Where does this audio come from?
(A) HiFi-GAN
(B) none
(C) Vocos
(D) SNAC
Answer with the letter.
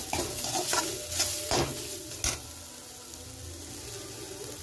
B